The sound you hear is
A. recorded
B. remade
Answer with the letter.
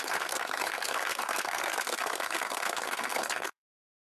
B